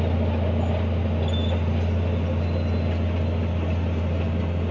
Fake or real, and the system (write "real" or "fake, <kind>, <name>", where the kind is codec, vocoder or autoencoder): real